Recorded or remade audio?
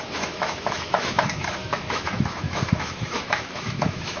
remade